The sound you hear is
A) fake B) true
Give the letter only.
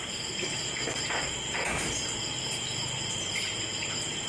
A